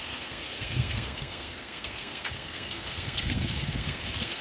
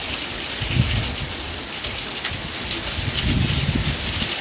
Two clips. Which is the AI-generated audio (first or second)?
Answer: first